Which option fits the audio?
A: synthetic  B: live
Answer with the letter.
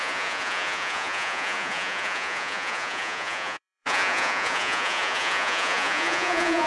A